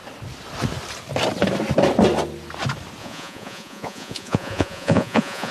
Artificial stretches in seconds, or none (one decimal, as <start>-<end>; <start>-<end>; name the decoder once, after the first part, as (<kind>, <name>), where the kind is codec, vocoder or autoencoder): 3.0-5.5 (vocoder, Vocos)